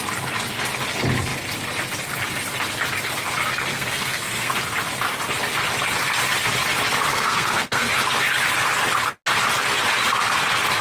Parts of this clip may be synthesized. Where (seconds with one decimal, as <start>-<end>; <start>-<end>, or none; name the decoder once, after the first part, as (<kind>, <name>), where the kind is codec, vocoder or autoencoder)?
3.7-4.5 (codec, SNAC); 7.1-7.9